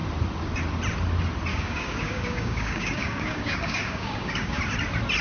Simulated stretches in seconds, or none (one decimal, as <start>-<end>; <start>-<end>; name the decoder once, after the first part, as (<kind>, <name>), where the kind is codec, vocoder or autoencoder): 1.5-4.6 (codec, DAC)